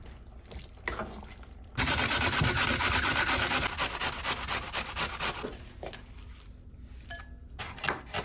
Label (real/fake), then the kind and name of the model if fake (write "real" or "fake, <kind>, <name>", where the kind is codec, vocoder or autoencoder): real